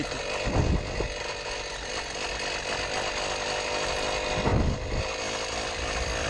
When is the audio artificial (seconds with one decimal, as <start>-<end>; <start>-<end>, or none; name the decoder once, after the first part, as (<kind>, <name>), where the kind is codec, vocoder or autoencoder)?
none